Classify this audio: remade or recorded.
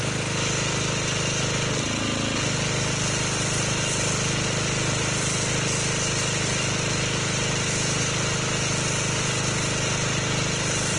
recorded